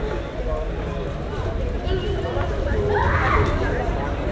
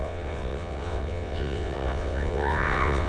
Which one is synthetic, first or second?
second